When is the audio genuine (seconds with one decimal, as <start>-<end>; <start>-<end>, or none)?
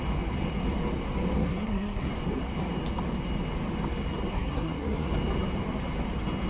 0.0-1.4; 2.1-4.3; 5.1-6.5